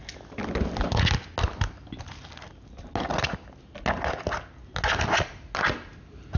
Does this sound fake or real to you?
real